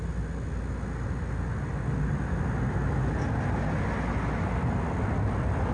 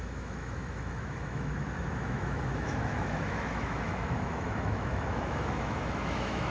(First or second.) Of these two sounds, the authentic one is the first